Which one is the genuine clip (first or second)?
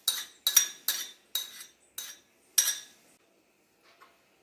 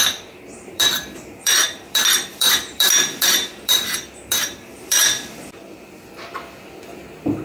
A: first